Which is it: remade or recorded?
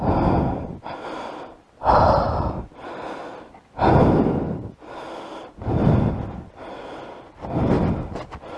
recorded